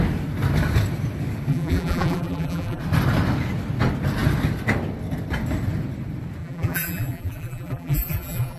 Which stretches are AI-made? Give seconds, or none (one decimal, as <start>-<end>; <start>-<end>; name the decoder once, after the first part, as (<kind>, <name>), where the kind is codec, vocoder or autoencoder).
1.5-2.8 (vocoder, BigVGAN v2); 6.4-8.6